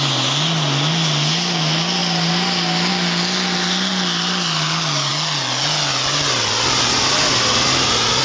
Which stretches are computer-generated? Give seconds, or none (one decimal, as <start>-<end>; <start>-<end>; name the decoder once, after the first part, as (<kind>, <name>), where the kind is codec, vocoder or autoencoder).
none